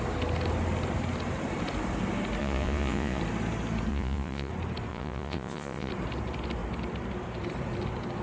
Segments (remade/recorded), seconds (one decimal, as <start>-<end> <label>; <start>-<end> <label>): 0.0-2.4 recorded; 2.4-3.2 remade; 3.2-3.9 recorded; 3.9-4.5 remade; 4.5-4.9 recorded; 4.9-5.9 remade; 5.9-8.2 recorded